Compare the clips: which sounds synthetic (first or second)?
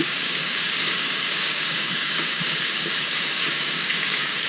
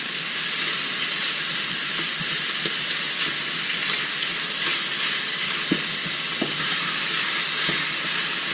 first